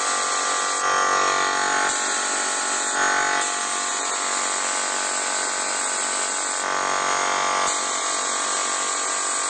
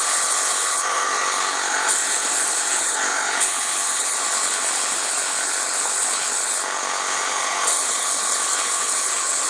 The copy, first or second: second